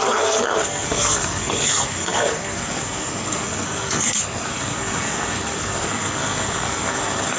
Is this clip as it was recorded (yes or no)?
no